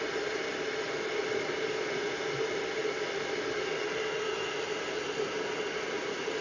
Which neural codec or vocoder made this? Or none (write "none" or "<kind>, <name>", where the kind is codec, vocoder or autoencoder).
none